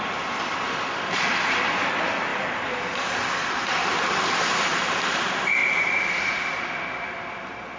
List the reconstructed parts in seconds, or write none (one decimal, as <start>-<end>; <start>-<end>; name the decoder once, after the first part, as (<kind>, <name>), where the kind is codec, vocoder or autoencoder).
0.0-2.3 (vocoder, BigVGAN v2); 3.7-7.8